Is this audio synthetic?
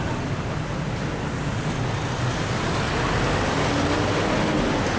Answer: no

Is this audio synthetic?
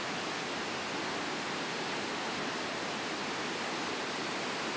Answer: no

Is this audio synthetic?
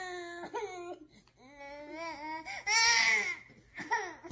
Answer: no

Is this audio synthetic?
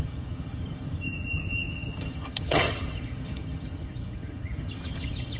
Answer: yes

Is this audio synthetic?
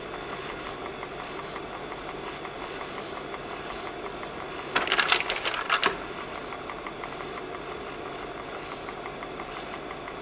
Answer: no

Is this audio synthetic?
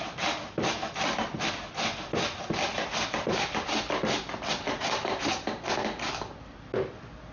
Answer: no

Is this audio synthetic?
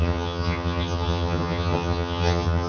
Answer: yes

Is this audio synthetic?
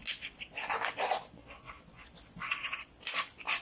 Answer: no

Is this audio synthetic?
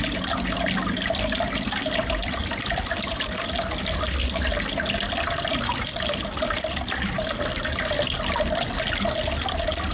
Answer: no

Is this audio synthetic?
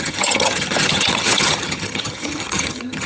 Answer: yes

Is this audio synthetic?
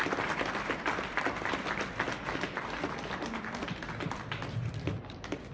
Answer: no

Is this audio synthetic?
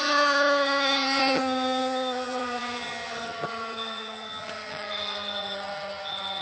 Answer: yes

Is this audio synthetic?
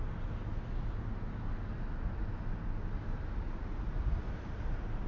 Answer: no